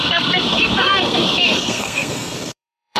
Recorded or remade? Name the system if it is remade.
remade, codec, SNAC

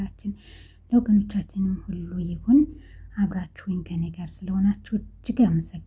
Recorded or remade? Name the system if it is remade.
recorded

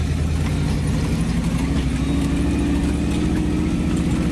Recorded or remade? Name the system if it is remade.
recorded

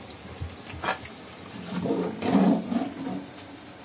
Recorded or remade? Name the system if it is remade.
recorded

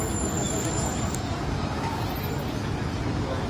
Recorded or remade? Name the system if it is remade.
recorded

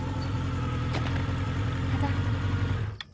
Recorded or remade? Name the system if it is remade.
recorded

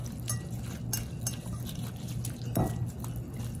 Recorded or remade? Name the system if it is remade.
recorded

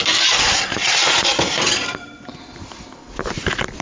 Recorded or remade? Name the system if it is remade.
recorded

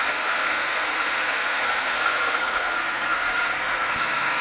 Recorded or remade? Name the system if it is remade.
remade, codec, SNAC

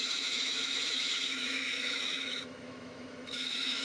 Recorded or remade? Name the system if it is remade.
remade, autoencoder, DAC-VAE